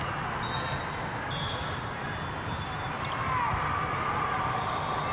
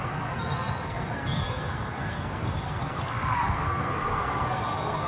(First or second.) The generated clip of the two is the second